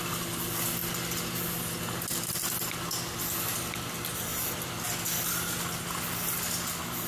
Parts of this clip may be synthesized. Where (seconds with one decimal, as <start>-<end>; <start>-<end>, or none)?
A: none